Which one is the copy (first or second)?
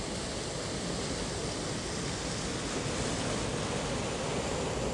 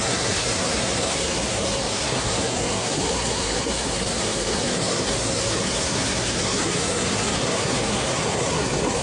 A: second